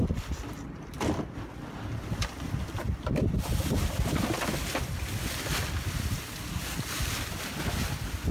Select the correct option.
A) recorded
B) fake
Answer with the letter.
A